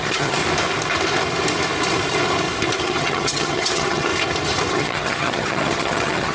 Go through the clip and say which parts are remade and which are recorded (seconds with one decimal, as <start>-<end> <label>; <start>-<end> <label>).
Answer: 0.0-0.4 remade; 0.4-2.8 recorded; 2.8-4.1 remade; 4.1-4.7 recorded; 4.7-6.3 remade